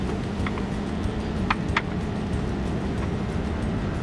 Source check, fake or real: real